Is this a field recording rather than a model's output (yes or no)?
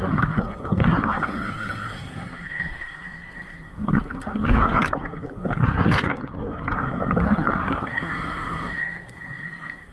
no